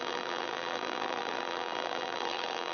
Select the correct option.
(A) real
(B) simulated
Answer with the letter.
B